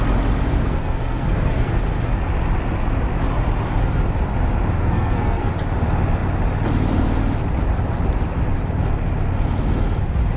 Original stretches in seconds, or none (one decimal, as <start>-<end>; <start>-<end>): 0.0-0.6; 1.7-4.8; 5.5-10.4